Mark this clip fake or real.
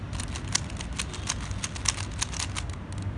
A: real